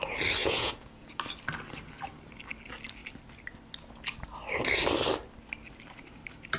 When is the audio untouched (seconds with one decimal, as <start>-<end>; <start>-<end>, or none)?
0.0-0.4; 1.2-6.6